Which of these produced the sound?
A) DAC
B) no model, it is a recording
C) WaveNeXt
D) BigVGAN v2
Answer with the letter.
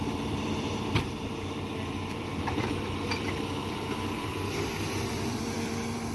D